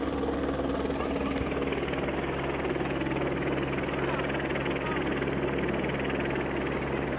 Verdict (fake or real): real